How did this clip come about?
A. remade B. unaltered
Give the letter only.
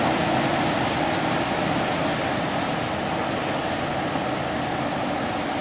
A